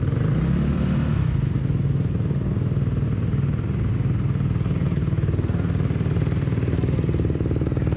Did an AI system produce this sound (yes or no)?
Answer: no